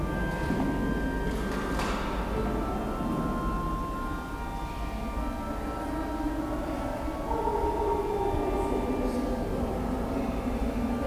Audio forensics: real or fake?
real